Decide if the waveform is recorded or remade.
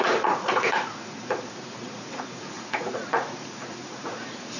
remade